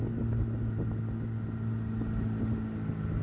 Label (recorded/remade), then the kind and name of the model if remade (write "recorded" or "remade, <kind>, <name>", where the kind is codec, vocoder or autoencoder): recorded